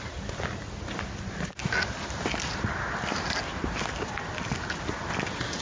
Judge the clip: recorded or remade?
recorded